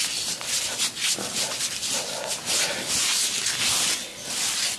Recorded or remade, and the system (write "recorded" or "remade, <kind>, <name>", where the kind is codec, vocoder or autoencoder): recorded